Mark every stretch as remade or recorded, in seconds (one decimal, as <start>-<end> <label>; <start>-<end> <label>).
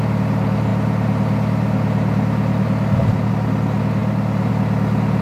0.0-5.2 recorded